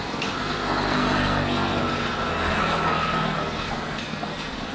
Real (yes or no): no